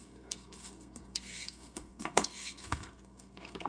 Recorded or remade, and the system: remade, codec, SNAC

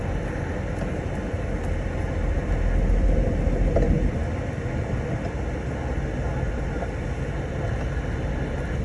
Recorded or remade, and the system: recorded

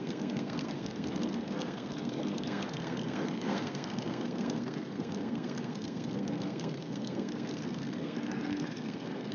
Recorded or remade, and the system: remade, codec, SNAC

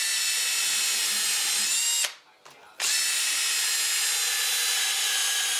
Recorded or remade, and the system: recorded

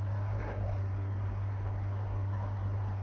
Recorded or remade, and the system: remade, codec, SNAC